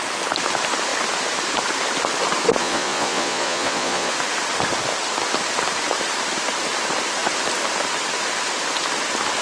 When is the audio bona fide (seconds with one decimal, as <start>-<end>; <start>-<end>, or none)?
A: 0.0-2.6; 4.1-9.4